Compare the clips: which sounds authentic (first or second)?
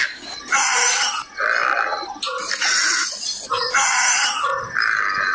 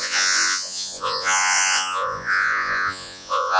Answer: first